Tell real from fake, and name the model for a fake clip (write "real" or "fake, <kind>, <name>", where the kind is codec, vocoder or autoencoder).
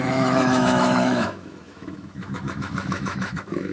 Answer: fake, autoencoder, DAC-VAE